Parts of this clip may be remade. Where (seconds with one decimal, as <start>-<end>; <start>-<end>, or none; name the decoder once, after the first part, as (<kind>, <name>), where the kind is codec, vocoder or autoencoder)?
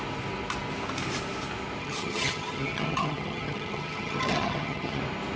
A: 1.8-5.0 (vocoder, HiFi-GAN)